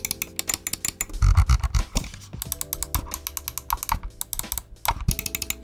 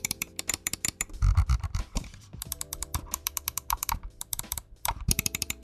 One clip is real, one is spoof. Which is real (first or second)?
first